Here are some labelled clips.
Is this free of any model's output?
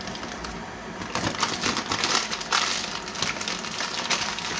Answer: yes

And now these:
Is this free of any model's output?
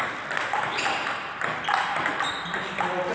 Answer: yes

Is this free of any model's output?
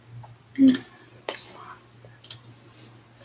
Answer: yes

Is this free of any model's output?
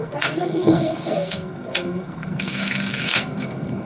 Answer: no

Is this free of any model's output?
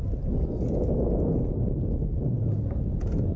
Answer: yes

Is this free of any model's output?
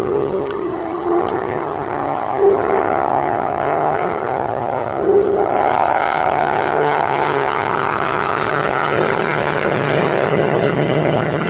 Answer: no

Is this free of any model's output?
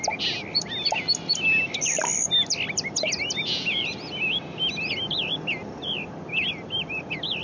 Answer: no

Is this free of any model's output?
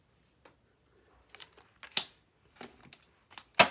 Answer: yes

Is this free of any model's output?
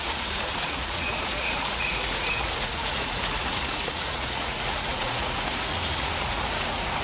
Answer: no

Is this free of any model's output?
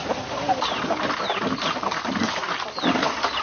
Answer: yes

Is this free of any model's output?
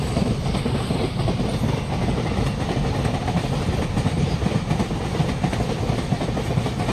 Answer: yes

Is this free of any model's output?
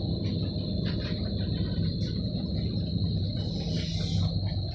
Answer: yes